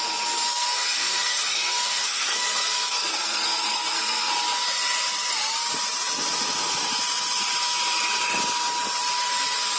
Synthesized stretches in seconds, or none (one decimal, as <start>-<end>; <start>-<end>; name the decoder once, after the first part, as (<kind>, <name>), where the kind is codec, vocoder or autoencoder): 0.5-4.3 (codec, SNAC)